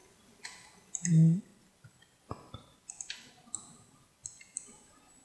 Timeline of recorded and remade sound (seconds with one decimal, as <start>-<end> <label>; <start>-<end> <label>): 0.0-5.2 recorded

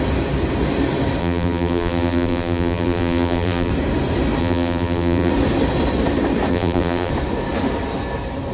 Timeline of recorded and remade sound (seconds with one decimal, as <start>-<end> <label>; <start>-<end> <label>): 0.0-1.2 recorded; 1.2-3.7 remade; 3.7-4.4 recorded; 4.4-5.3 remade; 5.3-6.5 recorded; 6.5-7.1 remade; 7.1-8.5 recorded